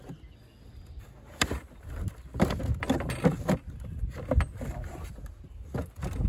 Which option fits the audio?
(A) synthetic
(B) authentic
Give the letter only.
B